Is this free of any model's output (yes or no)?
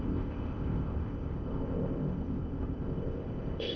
no